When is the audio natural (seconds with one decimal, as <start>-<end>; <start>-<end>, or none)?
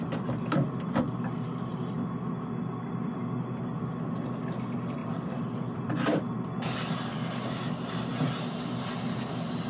0.0-1.7; 2.3-5.0; 6.2-9.7